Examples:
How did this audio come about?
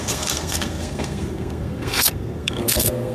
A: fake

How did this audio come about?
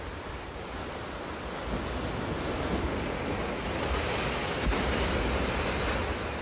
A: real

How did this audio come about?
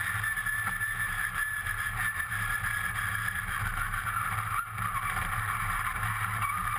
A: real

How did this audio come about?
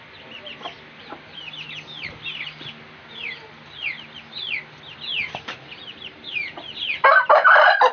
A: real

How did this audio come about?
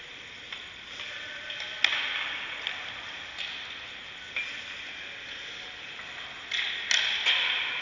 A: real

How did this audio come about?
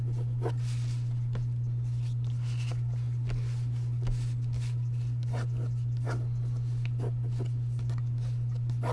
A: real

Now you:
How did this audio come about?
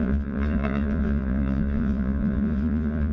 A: fake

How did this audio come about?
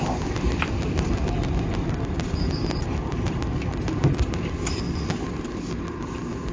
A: real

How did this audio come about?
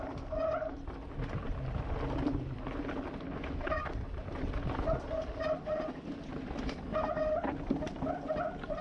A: real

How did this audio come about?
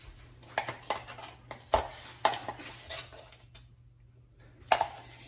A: real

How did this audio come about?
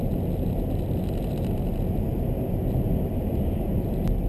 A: real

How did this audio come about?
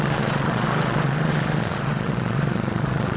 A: fake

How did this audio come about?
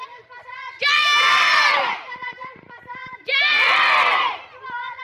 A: fake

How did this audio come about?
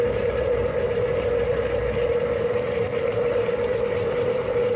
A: real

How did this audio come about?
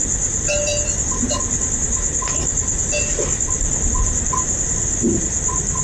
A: real